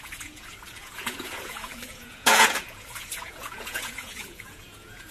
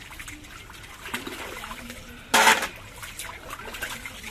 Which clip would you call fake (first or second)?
first